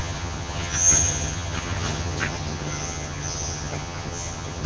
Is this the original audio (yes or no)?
no